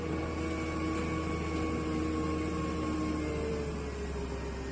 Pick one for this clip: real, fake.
real